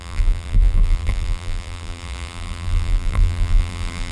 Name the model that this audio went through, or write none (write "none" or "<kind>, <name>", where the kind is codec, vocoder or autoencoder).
vocoder, BigVGAN v2